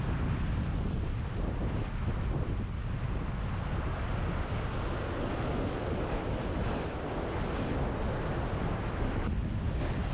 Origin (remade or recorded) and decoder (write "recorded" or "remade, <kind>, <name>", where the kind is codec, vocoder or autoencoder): recorded